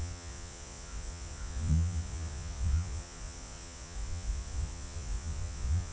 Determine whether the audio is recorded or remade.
remade